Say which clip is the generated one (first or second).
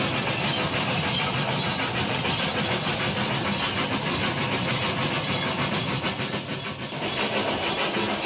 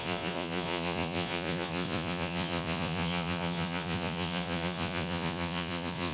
second